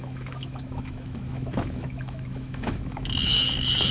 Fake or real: fake